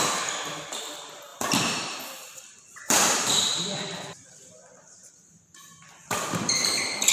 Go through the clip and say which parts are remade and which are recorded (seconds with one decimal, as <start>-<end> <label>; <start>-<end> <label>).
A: 0.0-1.3 recorded; 1.3-5.1 remade; 5.1-7.1 recorded